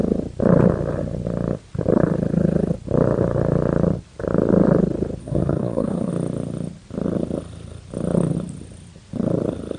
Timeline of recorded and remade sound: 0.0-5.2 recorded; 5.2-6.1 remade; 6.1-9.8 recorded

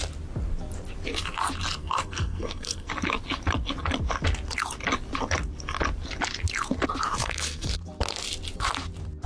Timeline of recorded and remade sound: 0.0-1.8 recorded; 1.8-2.9 remade; 2.9-7.2 recorded; 7.2-7.7 remade; 7.7-9.3 recorded

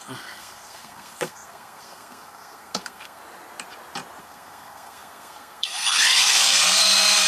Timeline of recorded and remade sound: 0.0-3.2 remade; 3.2-4.2 recorded; 4.2-7.3 remade

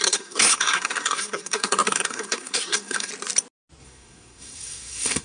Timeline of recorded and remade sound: 0.0-3.1 remade; 3.1-3.8 recorded; 3.8-5.2 remade

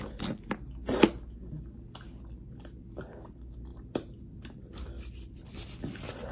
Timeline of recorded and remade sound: 0.0-6.3 recorded

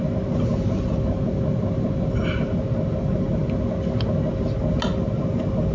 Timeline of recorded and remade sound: 0.0-5.7 recorded

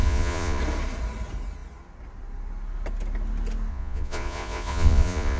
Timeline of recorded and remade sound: 0.0-0.6 remade; 0.6-3.7 recorded; 3.7-5.4 remade